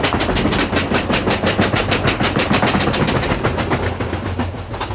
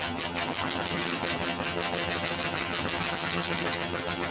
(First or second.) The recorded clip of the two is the first